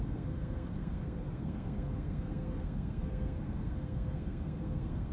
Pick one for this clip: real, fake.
fake